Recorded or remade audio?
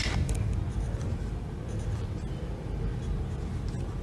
remade